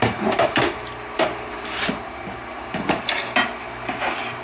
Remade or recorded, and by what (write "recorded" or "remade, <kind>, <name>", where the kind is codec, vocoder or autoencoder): remade, vocoder, BigVGAN v2